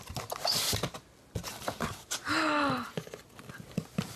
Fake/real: real